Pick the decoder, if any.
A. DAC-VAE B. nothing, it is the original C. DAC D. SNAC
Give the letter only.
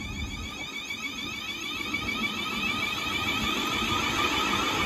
B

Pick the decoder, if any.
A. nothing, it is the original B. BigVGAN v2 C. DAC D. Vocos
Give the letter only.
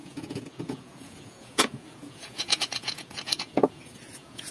D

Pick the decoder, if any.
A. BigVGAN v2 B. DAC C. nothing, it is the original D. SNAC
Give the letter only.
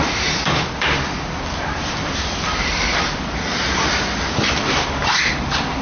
A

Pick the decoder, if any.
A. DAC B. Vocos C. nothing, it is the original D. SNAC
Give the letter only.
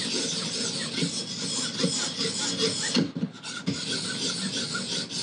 C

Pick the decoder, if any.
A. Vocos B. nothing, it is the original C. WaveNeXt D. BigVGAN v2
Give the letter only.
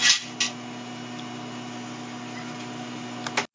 B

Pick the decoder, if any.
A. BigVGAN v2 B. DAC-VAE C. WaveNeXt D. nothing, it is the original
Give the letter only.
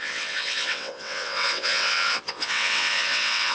C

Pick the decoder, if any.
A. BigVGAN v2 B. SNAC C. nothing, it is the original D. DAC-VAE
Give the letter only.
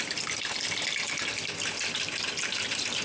C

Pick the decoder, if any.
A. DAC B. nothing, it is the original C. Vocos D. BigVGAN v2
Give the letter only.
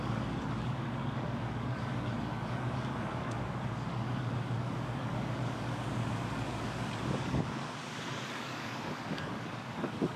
A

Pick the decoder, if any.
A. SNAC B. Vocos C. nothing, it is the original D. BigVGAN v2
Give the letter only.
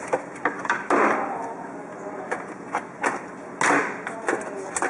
C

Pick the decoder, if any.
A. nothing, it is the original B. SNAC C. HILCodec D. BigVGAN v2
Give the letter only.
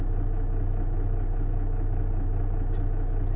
A